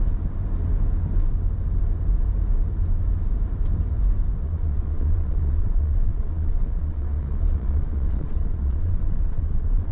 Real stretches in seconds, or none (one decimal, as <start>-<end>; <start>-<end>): 0.0-4.4